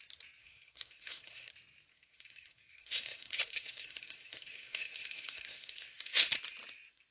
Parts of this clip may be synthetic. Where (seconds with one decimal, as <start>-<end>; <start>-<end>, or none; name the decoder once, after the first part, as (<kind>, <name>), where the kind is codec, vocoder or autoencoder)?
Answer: 0.4-1.5 (codec, SNAC); 1.9-6.2